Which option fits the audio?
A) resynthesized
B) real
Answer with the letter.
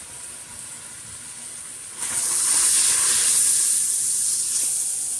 B